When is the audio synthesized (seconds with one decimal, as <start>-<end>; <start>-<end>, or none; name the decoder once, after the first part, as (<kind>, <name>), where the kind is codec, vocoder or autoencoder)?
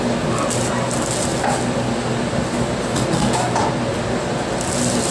none